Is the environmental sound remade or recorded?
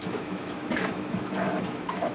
remade